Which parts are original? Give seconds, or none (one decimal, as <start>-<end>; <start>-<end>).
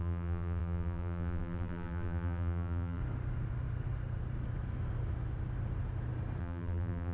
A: 3.0-6.4